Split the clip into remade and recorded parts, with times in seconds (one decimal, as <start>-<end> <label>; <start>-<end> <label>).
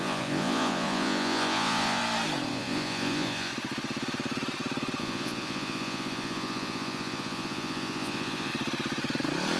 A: 0.0-2.0 remade; 2.0-2.5 recorded; 2.5-3.5 remade; 3.5-5.0 recorded; 5.0-8.5 remade; 8.5-9.6 recorded